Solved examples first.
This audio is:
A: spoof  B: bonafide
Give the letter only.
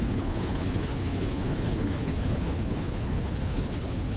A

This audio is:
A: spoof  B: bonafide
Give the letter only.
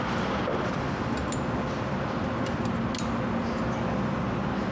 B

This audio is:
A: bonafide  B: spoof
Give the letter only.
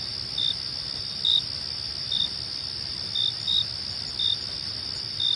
A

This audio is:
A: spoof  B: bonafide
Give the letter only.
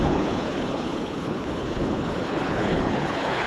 A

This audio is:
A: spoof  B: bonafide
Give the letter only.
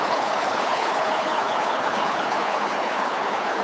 A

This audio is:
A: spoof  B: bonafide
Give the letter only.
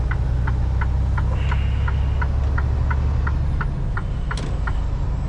B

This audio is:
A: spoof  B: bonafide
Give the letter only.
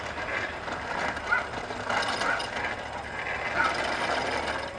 B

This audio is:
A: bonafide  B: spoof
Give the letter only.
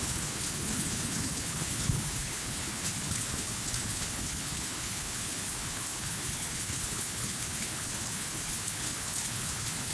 B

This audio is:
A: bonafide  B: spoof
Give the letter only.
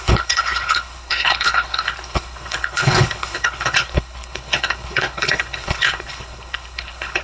B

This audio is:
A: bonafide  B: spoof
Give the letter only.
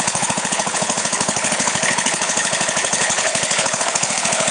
B